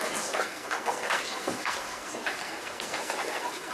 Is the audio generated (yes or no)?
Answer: yes